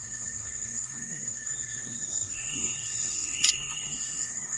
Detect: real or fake fake